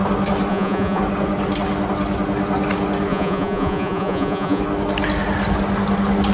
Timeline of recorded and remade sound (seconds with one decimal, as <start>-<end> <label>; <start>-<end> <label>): 0.0-0.5 recorded; 0.5-1.0 remade; 1.0-3.1 recorded; 3.1-4.6 remade; 4.6-6.3 recorded